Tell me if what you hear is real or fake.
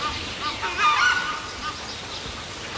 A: real